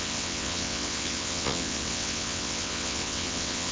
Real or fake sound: fake